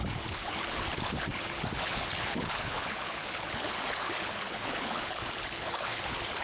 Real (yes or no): no